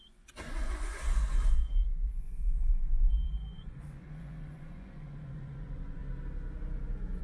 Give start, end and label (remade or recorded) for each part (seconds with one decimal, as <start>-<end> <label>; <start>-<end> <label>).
0.0-6.0 remade; 6.0-7.2 recorded